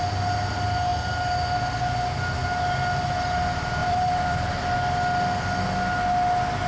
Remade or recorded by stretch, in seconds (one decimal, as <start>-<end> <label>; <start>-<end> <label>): 0.0-3.8 recorded; 3.8-4.6 remade; 4.6-6.7 recorded